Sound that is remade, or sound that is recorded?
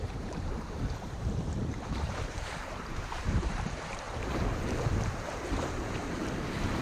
remade